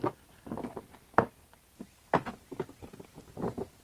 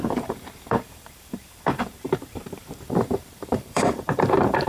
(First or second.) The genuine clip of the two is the first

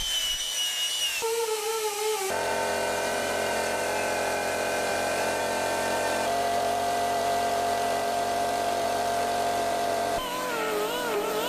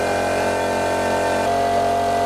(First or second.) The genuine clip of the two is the second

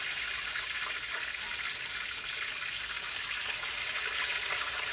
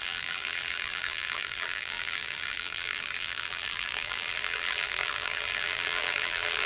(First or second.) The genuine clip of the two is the first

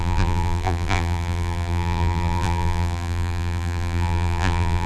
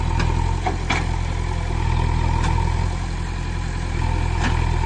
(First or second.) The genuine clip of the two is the second